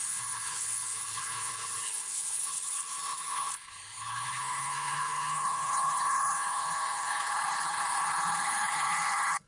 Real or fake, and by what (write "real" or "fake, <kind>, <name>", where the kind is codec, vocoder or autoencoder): fake, codec, HILCodec